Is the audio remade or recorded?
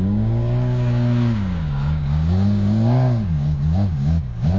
remade